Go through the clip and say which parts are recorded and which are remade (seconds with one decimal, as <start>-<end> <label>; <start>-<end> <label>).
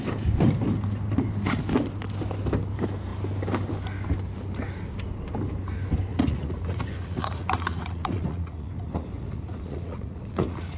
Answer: 0.0-6.1 recorded; 6.1-10.8 remade